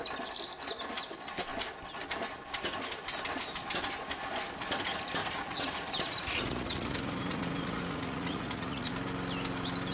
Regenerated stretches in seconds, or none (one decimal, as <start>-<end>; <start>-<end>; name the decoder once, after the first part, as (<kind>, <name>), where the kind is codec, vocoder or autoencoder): 5.2-8.9 (vocoder, Vocos)